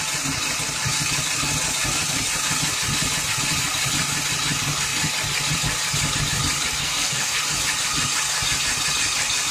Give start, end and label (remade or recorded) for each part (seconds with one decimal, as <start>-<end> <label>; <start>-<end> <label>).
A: 0.0-6.8 recorded; 6.8-7.4 remade; 7.4-9.5 recorded